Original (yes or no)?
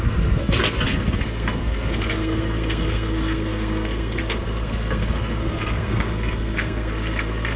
no